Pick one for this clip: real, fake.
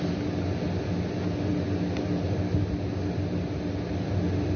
real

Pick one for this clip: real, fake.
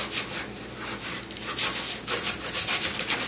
real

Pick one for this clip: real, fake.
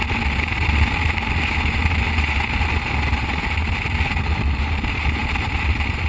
real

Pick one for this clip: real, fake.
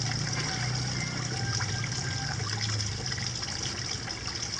real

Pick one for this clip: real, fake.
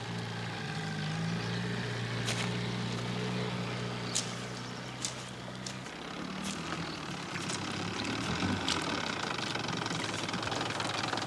real